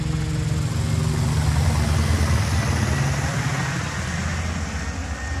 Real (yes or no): yes